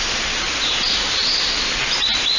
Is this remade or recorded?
remade